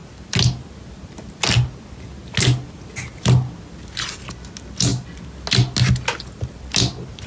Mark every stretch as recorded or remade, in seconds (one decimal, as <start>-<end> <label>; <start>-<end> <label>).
0.0-7.3 recorded